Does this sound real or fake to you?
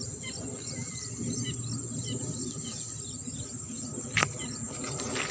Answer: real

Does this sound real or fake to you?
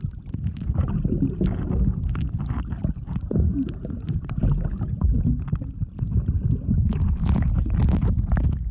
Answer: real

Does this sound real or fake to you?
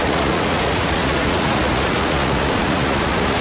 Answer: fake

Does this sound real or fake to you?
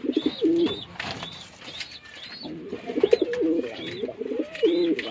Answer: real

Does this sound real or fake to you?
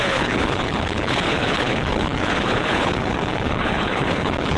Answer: fake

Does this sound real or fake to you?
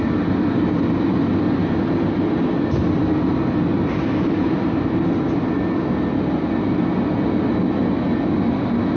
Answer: real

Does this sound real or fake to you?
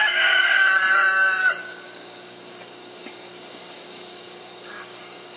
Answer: fake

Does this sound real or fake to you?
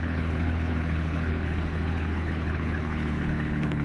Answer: fake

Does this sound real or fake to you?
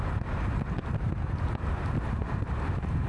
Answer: real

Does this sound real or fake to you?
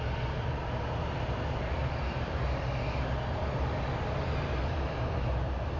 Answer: real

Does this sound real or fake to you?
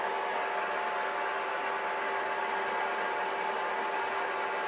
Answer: real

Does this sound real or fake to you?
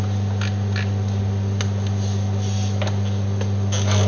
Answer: real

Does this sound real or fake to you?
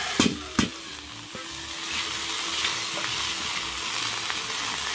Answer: real